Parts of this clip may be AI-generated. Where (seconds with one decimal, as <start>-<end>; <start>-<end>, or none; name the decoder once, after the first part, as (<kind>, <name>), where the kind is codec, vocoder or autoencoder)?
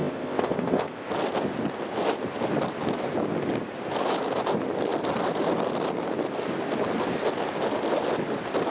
0.0-1.1 (codec, ZipCodec)